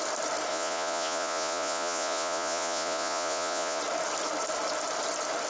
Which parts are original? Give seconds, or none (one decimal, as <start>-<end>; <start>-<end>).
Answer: 0.0-0.5; 3.8-5.5